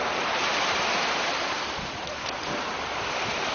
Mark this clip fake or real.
fake